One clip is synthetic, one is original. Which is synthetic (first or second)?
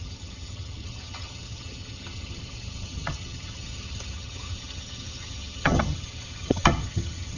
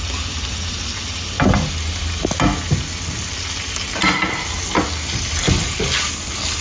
first